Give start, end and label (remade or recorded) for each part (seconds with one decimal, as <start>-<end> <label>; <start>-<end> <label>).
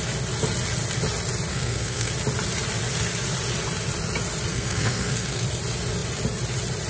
0.0-1.5 recorded; 1.5-2.1 remade; 2.1-4.5 recorded; 4.5-5.4 remade; 5.4-6.9 recorded